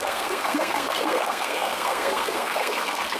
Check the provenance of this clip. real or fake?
fake